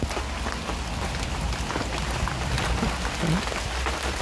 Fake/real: real